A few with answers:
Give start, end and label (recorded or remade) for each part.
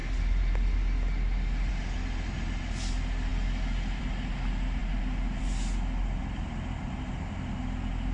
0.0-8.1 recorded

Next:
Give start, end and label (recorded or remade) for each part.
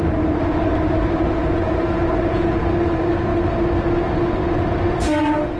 0.0-5.6 recorded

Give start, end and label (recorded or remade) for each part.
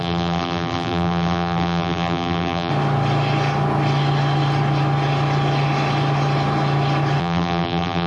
0.0-2.7 remade; 2.7-7.2 recorded; 7.2-8.1 remade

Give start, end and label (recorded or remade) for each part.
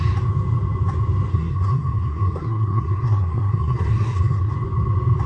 0.0-1.3 recorded; 1.3-4.5 remade; 4.5-5.3 recorded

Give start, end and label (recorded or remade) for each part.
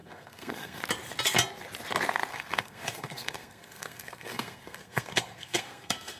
0.0-0.8 remade; 0.8-2.3 recorded; 2.3-6.2 remade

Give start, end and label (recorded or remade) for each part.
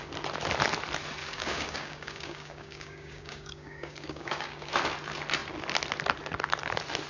0.0-1.2 recorded; 1.2-4.7 remade; 4.7-7.1 recorded